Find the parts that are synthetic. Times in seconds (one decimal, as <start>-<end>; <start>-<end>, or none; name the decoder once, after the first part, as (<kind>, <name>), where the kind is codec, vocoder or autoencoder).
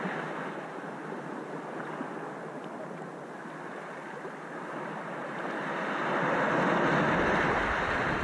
none